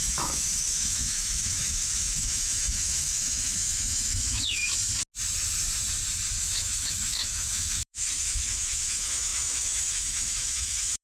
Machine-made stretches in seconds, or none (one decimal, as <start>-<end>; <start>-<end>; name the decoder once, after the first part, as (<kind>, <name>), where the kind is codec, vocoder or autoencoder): 0.0-4.6 (autoencoder, DAC-VAE); 6.4-11.0